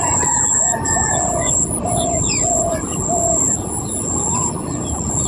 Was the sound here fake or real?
fake